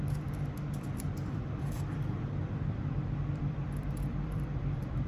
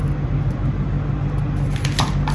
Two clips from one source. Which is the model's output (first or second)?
first